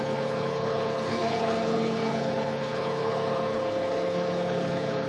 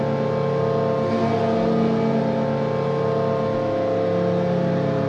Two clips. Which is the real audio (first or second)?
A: second